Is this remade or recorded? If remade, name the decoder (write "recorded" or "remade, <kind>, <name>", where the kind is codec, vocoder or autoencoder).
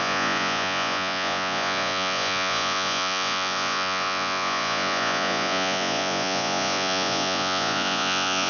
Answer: remade, vocoder, Vocos